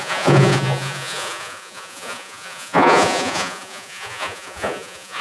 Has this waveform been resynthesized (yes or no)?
yes